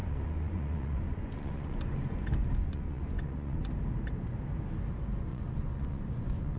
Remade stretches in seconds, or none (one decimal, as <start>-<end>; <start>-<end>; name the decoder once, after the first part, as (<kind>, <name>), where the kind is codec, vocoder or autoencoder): 0.0-3.7 (vocoder, Vocos); 5.3-6.6

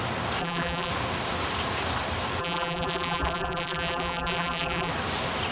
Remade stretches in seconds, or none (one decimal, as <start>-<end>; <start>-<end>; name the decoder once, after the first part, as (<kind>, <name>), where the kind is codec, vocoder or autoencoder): 0.4-0.9 (vocoder, BigVGAN v2); 2.4-4.9

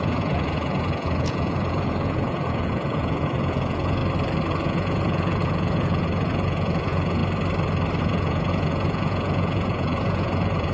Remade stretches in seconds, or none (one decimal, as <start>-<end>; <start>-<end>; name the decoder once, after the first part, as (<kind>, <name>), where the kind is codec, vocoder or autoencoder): 0.0-4.0 (vocoder, Vocos); 4.5-7.2; 8.0-10.7

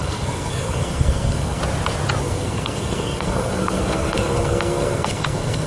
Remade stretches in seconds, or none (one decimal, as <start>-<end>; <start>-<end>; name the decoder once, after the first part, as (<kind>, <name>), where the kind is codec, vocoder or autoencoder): 0.0-1.6 (codec, SNAC); 2.2-5.7

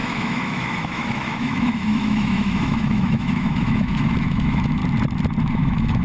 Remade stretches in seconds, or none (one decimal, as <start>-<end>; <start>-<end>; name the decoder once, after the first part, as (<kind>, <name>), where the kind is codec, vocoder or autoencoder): 0.0-4.8 (autoencoder, DAC-VAE); 5.4-6.0

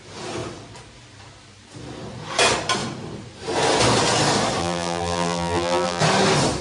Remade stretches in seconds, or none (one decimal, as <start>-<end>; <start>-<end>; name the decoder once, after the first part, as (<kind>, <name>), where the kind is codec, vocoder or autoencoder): 4.6-6.0 (vocoder, BigVGAN v2)

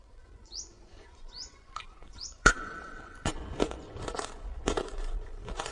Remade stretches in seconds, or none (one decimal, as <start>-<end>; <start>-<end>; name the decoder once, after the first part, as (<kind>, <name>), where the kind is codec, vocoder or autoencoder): 0.0-5.7 (vocoder, Vocos)